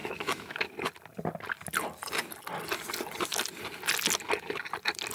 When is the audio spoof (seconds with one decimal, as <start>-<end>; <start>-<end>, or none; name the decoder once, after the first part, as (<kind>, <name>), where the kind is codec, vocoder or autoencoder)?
0.0-0.7 (autoencoder, DAC-VAE)